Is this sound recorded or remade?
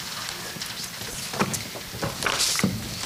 recorded